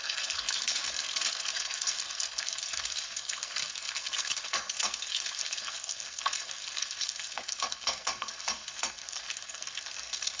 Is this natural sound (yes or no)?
no